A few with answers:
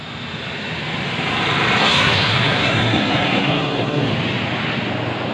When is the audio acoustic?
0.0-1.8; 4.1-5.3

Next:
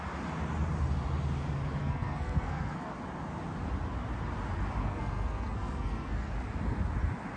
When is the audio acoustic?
0.0-1.8; 2.9-4.8; 6.3-7.4

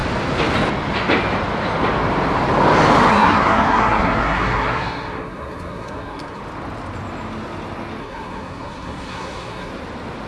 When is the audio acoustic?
0.0-3.1; 6.4-8.0; 9.7-10.3

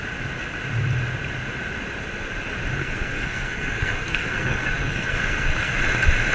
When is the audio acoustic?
0.0-2.8; 5.8-6.3